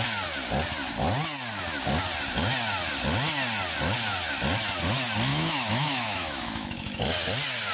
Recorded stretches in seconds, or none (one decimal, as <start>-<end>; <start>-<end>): 0.0-5.3; 7.0-7.7